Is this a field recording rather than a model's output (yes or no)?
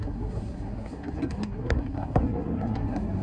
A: no